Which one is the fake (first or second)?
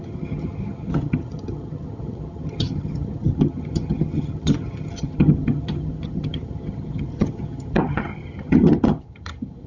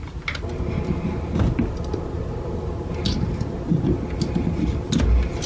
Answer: first